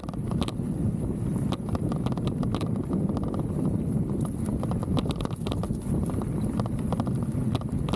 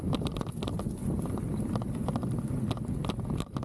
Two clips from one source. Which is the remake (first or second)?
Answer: first